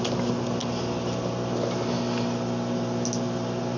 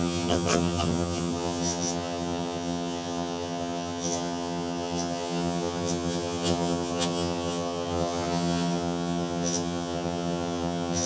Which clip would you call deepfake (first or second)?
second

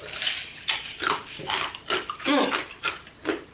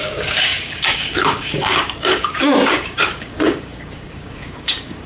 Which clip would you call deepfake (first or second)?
second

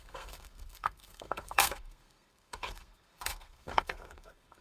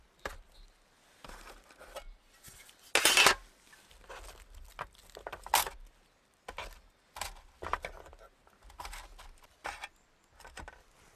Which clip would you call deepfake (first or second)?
first